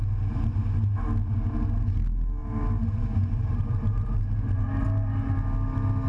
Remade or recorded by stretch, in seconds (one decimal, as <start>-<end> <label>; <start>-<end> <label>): 0.0-2.4 recorded; 2.4-4.2 remade; 4.2-6.1 recorded